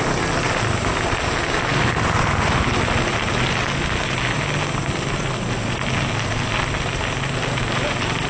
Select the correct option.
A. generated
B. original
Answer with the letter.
B